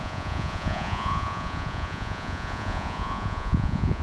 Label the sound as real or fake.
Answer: fake